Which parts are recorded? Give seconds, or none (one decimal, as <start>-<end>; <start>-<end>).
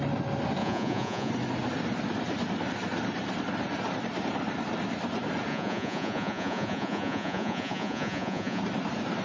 0.0-0.6; 1.3-5.5; 8.6-9.2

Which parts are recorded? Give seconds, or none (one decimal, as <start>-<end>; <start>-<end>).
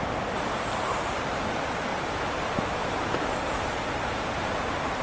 0.0-1.9; 4.5-5.0